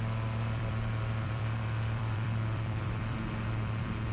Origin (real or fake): fake